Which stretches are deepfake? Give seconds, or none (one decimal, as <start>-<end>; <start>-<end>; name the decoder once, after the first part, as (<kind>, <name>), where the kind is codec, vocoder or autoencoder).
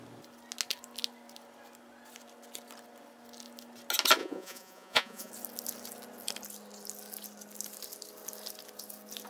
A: 4.2-5.3 (vocoder, Vocos)